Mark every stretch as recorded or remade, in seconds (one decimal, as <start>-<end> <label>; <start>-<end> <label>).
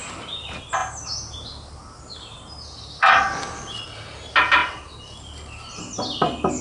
0.0-6.6 recorded